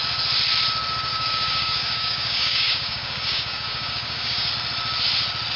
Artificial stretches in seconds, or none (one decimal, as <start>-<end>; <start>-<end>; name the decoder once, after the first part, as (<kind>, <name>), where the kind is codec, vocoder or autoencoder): 1.1-4.5 (codec, DAC)